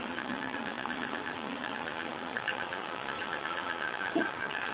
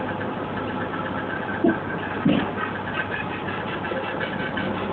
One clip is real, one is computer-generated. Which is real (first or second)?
second